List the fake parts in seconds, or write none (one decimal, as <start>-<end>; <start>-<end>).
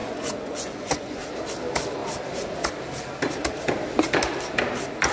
0.0-1.2